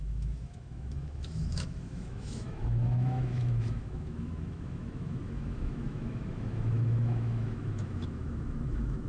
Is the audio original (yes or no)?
no